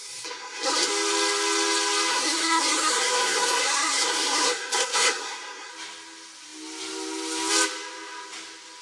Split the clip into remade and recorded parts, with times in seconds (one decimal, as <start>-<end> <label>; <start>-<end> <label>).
0.0-0.9 remade; 0.9-2.1 recorded; 2.1-5.7 remade; 5.7-8.8 recorded